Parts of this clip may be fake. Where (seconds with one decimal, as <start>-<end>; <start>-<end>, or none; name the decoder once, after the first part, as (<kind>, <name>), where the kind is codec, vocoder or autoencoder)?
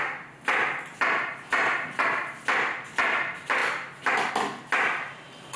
none